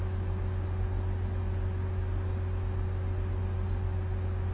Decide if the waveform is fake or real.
real